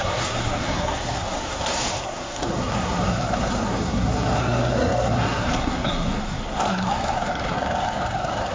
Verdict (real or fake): fake